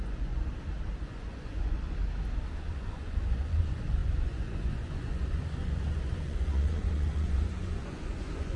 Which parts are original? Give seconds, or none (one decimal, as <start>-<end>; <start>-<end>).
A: 0.5-1.0; 2.0-2.6